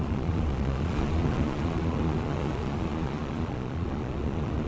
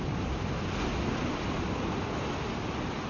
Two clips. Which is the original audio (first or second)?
second